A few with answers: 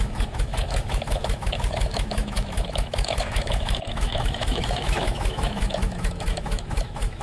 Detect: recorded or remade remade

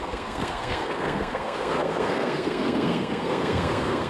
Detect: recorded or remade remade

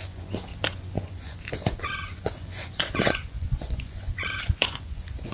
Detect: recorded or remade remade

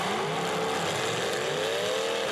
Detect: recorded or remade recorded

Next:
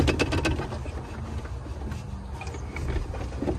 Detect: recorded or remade recorded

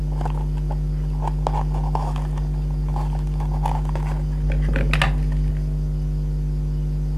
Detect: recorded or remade recorded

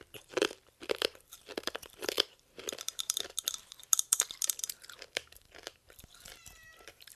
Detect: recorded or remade remade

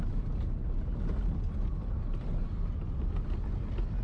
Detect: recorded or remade recorded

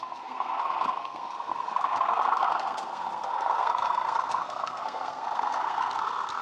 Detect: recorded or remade remade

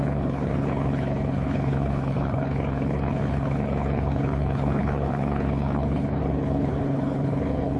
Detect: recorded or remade remade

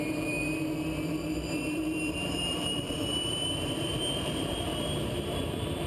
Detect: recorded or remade remade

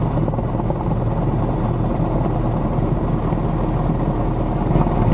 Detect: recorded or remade recorded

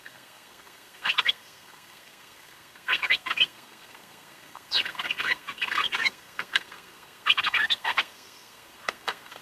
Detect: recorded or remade remade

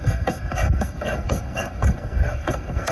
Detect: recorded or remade remade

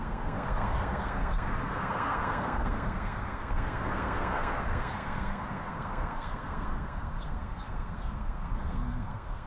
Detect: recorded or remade remade